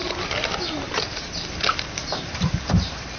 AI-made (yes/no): yes